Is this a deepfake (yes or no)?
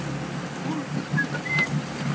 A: no